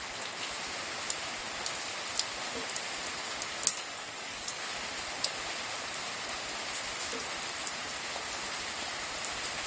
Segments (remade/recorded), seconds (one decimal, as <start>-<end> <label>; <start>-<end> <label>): 0.0-3.7 recorded; 3.7-4.6 remade; 4.6-9.7 recorded